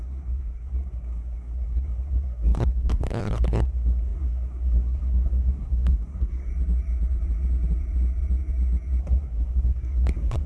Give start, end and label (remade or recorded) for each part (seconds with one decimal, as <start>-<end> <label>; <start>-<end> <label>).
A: 0.0-6.5 remade; 6.5-9.0 recorded; 9.0-10.5 remade